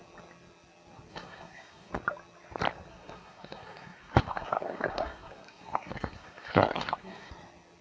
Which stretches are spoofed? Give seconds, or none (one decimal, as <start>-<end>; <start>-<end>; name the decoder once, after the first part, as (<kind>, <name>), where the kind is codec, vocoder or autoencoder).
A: 1.1-1.9 (codec, SNAC); 2.9-7.3